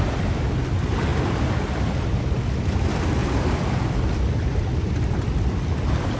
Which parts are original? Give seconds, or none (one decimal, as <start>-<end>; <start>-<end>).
0.0-3.2; 4.4-6.2